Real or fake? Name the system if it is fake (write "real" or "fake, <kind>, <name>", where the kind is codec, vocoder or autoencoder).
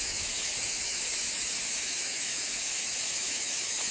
fake, autoencoder, DAC-VAE